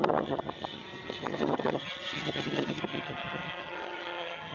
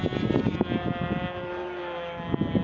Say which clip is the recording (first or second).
second